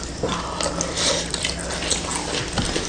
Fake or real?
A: real